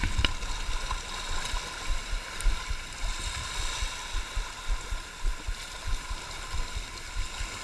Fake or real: real